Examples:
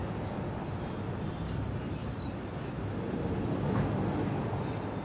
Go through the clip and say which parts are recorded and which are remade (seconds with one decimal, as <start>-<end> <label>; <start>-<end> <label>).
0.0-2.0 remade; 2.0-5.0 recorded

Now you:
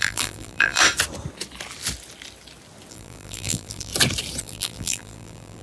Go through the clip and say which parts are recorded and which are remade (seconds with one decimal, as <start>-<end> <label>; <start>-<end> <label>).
0.0-0.8 remade; 0.8-2.9 recorded; 2.9-3.9 remade; 3.9-4.4 recorded; 4.4-5.6 remade

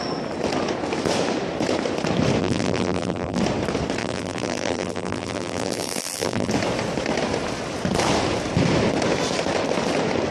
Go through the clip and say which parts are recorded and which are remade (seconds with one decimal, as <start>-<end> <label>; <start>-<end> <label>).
0.0-2.4 recorded; 2.4-3.4 remade; 3.4-4.0 recorded; 4.0-6.5 remade; 6.5-10.3 recorded